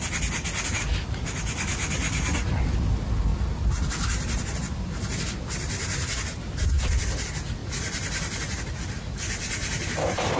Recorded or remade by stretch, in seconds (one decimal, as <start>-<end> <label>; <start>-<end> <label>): 0.0-7.6 recorded; 7.6-8.8 remade; 8.8-9.6 recorded; 9.6-10.4 remade